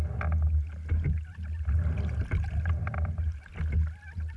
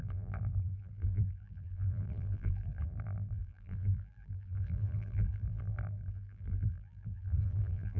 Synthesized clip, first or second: second